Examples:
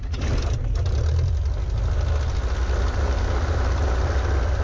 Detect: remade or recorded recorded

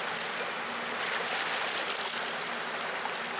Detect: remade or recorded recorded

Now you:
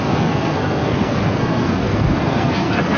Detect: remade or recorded remade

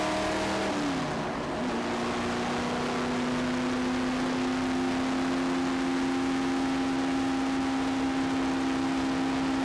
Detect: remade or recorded recorded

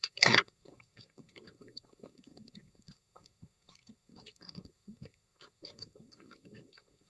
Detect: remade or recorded remade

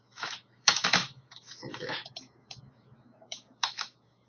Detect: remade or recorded remade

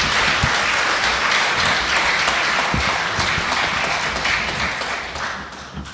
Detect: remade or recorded recorded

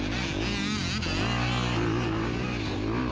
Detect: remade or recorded recorded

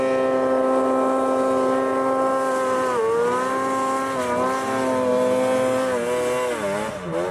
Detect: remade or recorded recorded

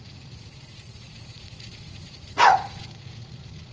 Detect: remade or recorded remade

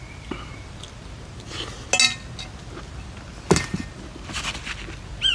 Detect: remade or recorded recorded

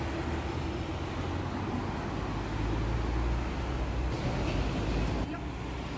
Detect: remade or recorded recorded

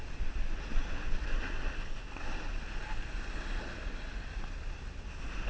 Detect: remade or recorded recorded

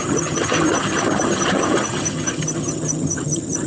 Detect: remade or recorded remade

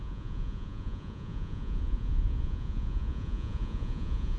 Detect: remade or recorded remade